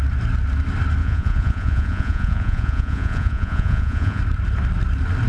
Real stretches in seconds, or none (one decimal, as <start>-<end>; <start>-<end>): 0.0-1.0; 4.2-5.3